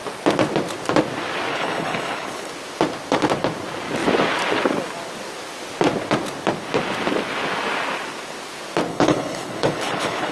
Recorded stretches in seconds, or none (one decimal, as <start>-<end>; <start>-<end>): 0.0-1.5; 2.5-8.9